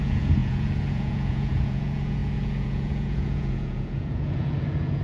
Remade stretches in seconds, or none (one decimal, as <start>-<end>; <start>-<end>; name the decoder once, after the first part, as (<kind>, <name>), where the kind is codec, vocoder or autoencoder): 0.0-5.0 (vocoder, Vocos)